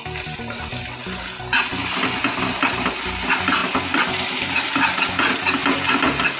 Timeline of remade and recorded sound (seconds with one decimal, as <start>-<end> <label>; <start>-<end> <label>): 0.0-6.4 recorded